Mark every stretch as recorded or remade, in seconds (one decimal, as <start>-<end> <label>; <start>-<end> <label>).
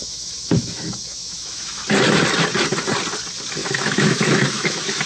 0.0-1.8 remade; 1.8-3.6 recorded; 3.6-5.1 remade